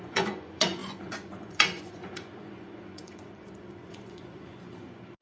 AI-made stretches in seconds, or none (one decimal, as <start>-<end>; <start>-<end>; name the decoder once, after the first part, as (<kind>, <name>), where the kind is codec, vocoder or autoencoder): 0.0-5.2 (vocoder, Vocos)